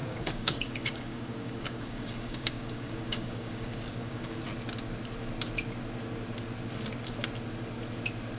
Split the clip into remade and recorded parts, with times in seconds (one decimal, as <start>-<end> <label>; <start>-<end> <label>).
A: 0.0-4.4 remade; 4.4-8.4 recorded